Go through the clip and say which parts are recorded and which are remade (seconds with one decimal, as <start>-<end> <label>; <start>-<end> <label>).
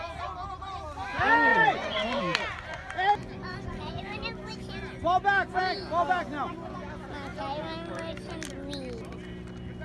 0.0-1.5 recorded; 1.5-2.2 remade; 2.2-3.2 recorded; 3.2-4.2 remade; 4.2-9.8 recorded